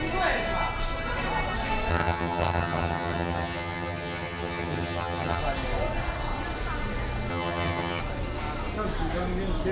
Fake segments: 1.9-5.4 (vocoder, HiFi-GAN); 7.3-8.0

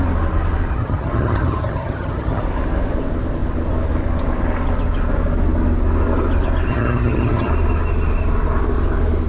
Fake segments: 0.7-2.4 (vocoder, HiFi-GAN); 6.7-7.5

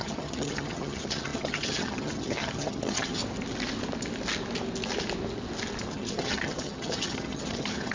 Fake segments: 0.0-3.2 (vocoder, HiFi-GAN); 5.9-7.9

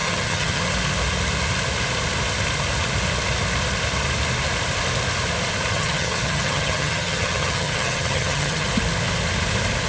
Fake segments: 0.0-0.6 (vocoder, HiFi-GAN); 5.7-8.7

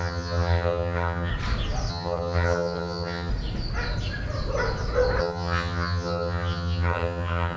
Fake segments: 0.0-1.3 (vocoder, HiFi-GAN); 1.9-3.3; 5.2-7.6

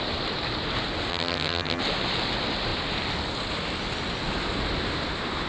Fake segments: 1.1-1.8 (vocoder, HiFi-GAN)

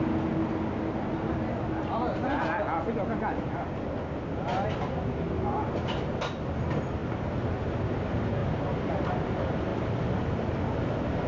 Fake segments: none